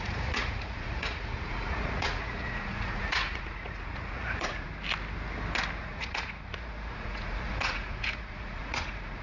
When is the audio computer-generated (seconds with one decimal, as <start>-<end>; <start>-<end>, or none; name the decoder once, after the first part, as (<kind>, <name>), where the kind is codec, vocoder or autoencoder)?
0.0-4.7 (vocoder, Vocos); 5.8-9.2